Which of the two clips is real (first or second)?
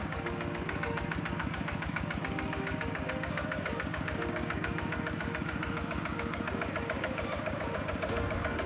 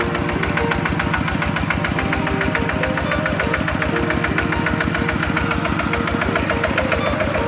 second